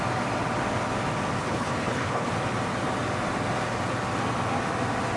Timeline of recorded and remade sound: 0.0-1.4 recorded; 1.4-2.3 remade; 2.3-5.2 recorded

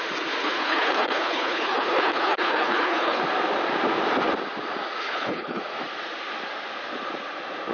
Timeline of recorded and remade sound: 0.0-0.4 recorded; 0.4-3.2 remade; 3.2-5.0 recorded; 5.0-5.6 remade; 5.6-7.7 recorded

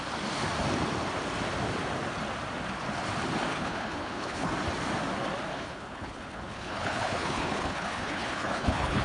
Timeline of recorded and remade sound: 0.0-3.5 recorded; 3.5-4.5 remade; 4.5-5.5 recorded; 5.5-9.0 remade

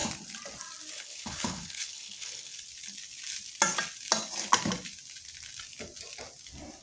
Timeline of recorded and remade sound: 0.0-0.9 recorded; 0.9-2.5 remade; 2.5-6.8 recorded

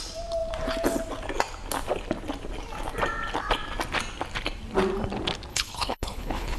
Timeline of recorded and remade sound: 0.0-5.5 recorded; 5.5-6.6 remade

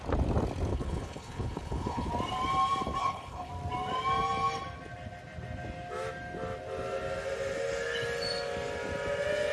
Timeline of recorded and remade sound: 0.0-0.7 recorded; 0.7-2.1 remade; 2.1-3.0 recorded; 3.0-3.5 remade; 3.5-9.5 recorded

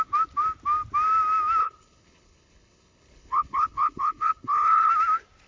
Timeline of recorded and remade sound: 0.0-1.6 recorded; 1.6-4.9 remade; 4.9-5.5 recorded

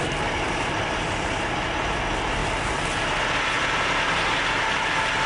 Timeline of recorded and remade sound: 0.0-5.3 recorded